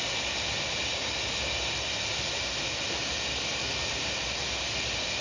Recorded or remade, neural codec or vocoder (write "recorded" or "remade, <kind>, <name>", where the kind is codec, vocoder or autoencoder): recorded